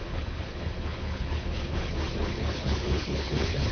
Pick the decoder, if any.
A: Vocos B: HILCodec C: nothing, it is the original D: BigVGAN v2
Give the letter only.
B